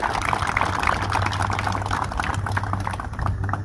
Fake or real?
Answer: real